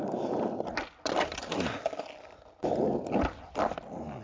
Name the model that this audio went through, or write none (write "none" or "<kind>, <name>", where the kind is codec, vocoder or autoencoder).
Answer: none